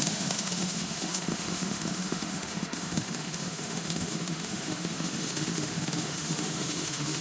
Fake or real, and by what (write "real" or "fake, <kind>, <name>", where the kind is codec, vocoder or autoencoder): fake, autoencoder, DAC-VAE